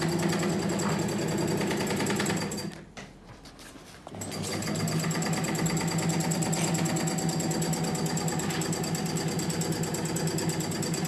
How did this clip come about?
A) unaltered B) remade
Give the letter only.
A